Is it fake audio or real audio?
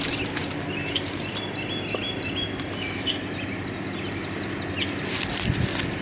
real